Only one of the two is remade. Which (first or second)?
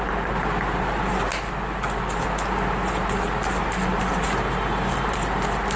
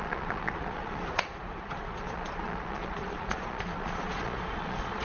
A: second